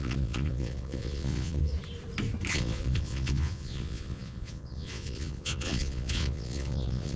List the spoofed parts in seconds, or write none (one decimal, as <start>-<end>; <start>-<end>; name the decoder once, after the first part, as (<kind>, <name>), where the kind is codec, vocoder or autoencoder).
0.0-1.7 (vocoder, Vocos); 2.5-7.2